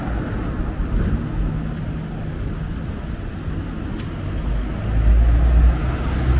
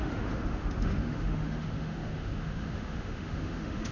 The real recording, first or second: first